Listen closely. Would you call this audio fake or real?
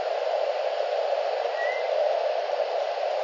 real